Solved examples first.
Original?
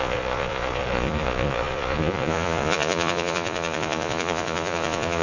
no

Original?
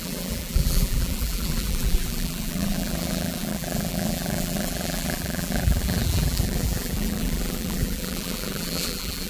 no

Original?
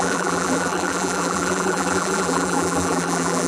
no